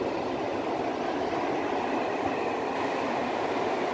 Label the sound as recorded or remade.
recorded